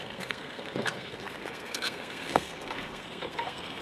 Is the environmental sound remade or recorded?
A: remade